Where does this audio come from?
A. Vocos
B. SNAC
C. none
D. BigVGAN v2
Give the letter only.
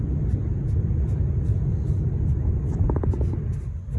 C